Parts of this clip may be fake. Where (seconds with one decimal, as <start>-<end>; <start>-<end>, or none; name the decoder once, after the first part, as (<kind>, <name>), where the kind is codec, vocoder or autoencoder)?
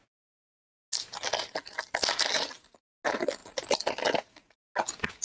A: none